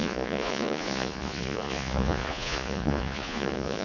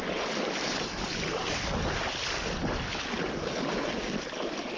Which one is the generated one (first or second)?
first